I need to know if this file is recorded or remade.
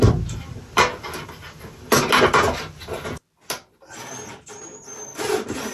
recorded